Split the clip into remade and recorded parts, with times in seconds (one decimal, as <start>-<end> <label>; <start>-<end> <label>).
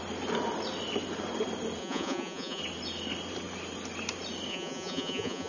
0.0-1.8 recorded; 1.8-2.6 remade; 2.6-4.5 recorded; 4.5-5.5 remade